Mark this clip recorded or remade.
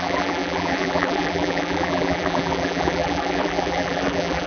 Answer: remade